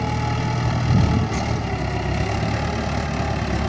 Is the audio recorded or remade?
recorded